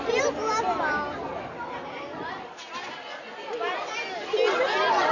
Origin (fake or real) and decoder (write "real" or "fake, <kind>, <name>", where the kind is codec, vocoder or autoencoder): real